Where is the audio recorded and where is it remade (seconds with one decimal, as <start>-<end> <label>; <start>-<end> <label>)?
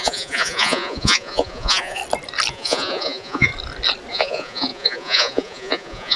0.0-2.0 remade; 2.0-2.5 recorded; 2.5-3.5 remade; 3.5-4.1 recorded; 4.1-6.2 remade